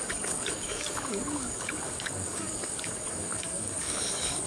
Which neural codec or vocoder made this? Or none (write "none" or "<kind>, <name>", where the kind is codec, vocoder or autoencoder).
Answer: codec, DAC